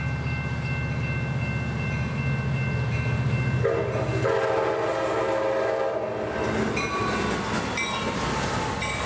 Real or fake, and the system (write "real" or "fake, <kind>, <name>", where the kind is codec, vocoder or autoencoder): real